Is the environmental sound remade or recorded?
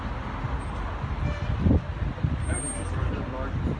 recorded